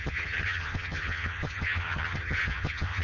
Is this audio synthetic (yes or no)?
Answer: yes